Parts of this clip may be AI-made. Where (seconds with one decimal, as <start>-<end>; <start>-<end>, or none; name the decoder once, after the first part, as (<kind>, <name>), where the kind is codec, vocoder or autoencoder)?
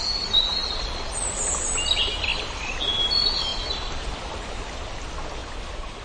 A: 3.5-5.0 (vocoder, BigVGAN v2)